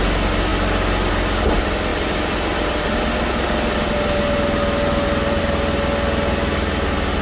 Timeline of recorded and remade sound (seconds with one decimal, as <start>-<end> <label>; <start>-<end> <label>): 0.0-7.2 recorded